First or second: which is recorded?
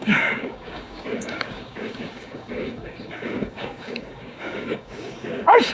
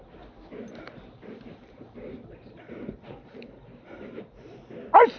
second